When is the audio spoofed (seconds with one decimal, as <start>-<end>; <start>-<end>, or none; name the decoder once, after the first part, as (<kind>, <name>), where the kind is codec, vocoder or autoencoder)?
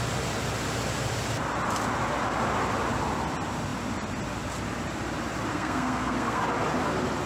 5.5-6.4 (codec, SNAC)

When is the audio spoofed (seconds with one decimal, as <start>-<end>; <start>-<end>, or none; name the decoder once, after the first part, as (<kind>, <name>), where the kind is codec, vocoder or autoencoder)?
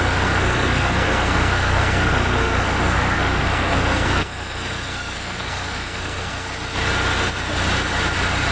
0.0-6.5 (codec, SNAC)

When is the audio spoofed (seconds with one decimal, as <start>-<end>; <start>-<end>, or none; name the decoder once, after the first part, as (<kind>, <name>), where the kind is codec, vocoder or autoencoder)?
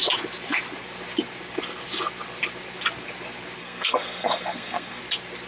3.6-5.0 (codec, SNAC)